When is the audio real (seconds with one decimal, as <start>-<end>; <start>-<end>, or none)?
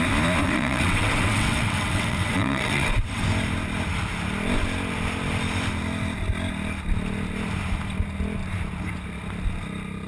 0.0-0.4; 3.2-10.1